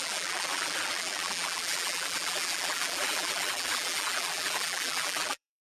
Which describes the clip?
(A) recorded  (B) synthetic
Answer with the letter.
B